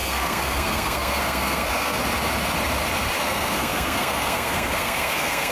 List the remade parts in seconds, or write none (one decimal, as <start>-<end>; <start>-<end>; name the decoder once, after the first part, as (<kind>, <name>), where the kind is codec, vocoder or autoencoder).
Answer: 0.0-2.0 (codec, SNAC); 3.2-5.5